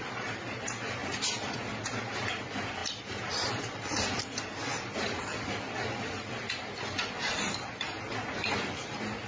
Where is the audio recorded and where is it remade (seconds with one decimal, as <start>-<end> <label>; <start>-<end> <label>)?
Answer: 0.0-1.0 recorded; 1.0-1.8 remade; 1.8-2.8 recorded; 2.8-7.4 remade; 7.4-9.3 recorded